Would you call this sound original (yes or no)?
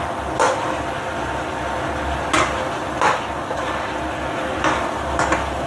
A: yes